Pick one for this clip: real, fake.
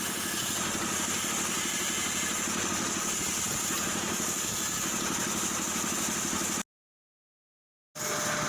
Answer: real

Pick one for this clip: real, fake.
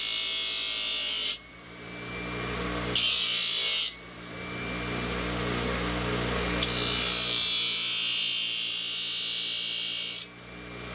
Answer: real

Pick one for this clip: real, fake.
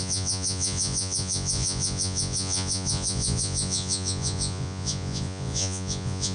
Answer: fake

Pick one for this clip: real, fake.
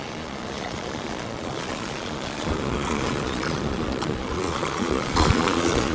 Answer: fake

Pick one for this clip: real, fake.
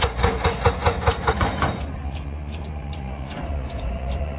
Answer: fake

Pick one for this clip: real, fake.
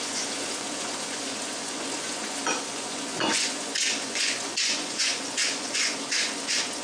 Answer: fake